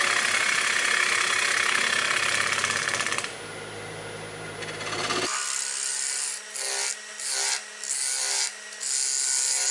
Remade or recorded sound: recorded